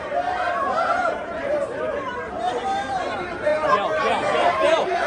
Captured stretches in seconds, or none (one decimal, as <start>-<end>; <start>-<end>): 3.5-4.5